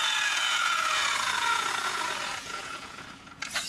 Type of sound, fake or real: fake